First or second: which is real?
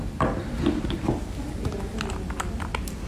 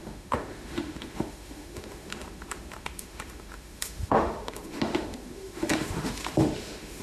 first